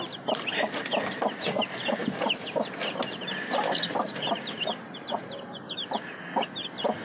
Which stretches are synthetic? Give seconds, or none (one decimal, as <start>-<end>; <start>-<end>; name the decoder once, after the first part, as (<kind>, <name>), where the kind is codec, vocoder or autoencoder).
none